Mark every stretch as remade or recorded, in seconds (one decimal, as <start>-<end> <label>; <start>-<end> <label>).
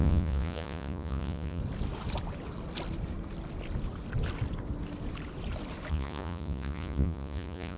0.0-1.6 remade; 1.6-5.9 recorded; 5.9-7.8 remade